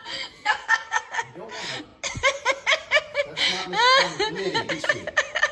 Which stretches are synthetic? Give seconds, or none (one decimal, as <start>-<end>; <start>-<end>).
0.0-1.0